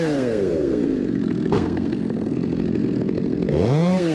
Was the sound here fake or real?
fake